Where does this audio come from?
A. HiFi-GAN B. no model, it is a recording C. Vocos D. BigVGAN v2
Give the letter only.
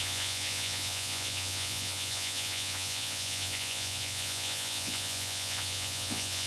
C